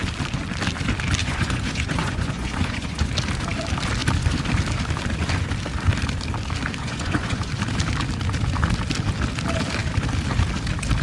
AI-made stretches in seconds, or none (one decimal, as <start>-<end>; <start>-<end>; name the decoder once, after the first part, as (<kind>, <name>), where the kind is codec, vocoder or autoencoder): 1.2-3.1 (vocoder, Vocos); 6.8-7.5